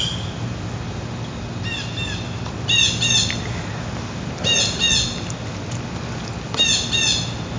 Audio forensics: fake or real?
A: real